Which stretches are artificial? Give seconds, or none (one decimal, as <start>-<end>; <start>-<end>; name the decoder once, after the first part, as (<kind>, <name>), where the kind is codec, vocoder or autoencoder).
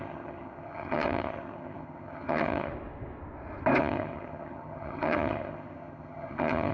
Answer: 0.0-2.7 (vocoder, HiFi-GAN); 3.8-6.7